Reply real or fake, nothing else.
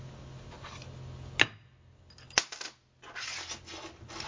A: real